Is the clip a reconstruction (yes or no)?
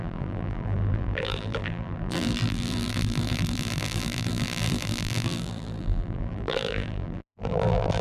yes